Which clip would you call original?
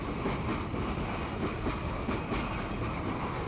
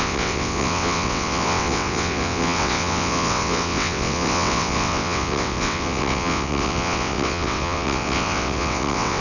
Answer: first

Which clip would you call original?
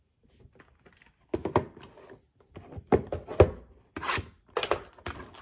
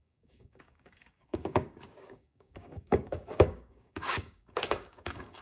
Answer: first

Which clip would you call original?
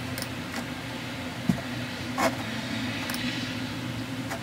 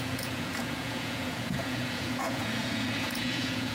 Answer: first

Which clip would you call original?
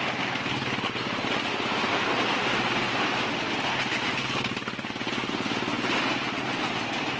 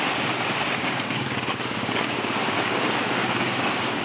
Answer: first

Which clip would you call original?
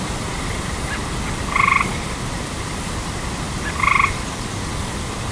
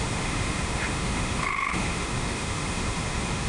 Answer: first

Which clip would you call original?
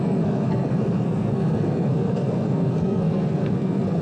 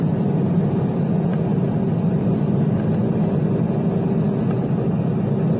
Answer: second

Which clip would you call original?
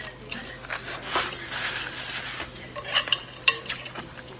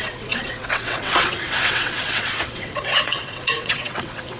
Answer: first